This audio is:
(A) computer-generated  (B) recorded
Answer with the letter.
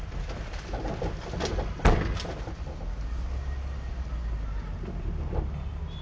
B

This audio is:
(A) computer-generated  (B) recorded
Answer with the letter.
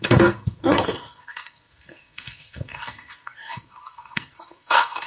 A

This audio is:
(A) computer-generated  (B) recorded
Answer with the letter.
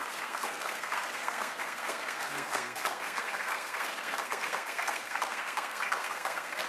A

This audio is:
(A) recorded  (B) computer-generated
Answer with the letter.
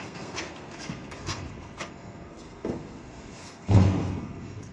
B